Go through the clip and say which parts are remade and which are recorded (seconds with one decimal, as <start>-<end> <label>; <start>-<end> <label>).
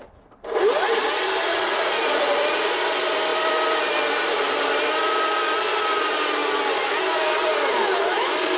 0.0-1.5 recorded; 1.5-2.7 remade; 2.7-8.6 recorded